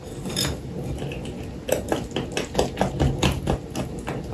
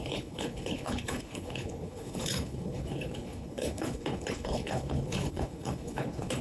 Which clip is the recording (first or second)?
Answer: first